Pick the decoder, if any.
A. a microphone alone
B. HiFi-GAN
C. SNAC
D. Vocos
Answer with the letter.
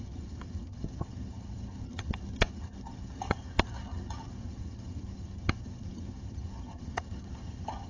B